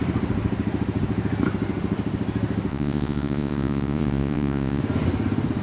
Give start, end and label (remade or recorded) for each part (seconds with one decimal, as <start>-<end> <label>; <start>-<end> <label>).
0.0-2.7 recorded; 2.7-4.8 remade; 4.8-5.6 recorded